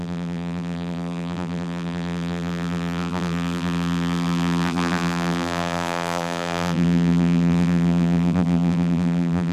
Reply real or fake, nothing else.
fake